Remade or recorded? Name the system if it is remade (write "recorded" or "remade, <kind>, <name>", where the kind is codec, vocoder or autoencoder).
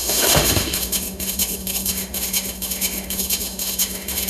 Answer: remade, autoencoder, DAC-VAE